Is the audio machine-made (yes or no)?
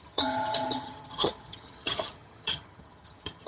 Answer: yes